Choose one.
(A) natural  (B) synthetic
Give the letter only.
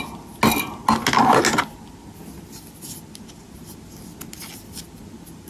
A